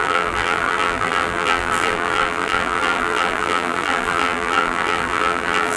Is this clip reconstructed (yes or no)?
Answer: yes